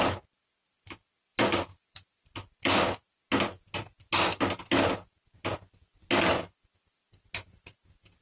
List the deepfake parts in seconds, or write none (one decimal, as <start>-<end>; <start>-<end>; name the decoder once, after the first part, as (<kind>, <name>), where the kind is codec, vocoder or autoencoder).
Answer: 1.3-2.2 (vocoder, BigVGAN v2)